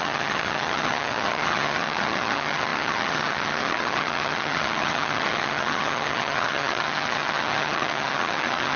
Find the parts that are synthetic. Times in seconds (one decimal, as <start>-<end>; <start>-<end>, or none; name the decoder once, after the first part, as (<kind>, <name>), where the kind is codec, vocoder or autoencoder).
0.0-8.8 (vocoder, HiFi-GAN)